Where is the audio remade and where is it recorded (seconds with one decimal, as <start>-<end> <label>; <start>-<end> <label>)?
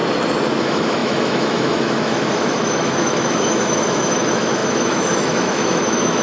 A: 0.0-0.6 recorded; 0.6-6.2 remade